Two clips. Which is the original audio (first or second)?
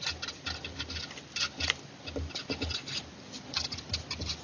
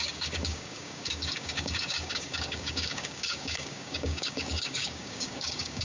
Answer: first